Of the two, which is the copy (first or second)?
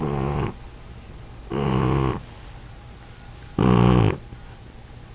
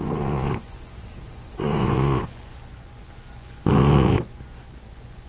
second